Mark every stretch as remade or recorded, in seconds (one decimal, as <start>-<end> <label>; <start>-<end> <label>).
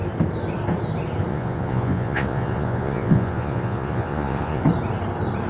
0.0-1.3 recorded; 1.3-4.6 remade; 4.6-5.5 recorded